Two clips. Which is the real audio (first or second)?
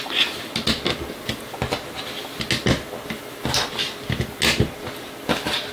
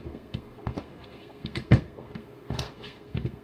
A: first